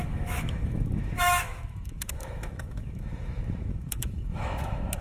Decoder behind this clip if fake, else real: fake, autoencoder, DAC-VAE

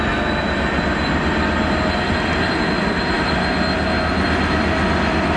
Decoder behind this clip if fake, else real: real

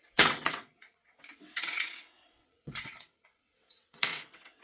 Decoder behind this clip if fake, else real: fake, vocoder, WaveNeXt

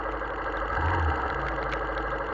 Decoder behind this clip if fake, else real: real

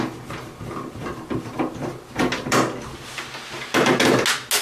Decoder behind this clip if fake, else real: real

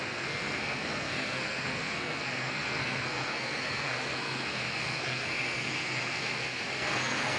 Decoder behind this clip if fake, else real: fake, codec, SNAC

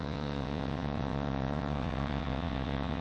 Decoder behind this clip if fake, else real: fake, vocoder, WaveNeXt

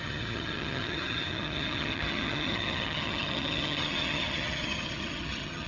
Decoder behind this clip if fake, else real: fake, vocoder, HiFi-GAN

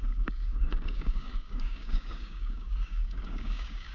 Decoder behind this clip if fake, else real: fake, codec, DAC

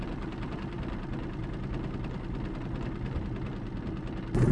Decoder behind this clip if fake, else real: real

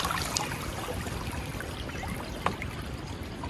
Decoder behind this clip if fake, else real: real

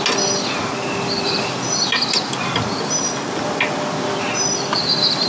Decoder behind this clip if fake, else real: real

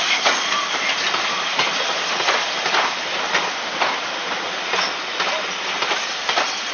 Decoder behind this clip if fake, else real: real